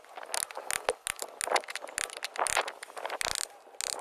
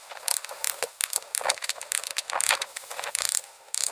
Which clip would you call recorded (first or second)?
first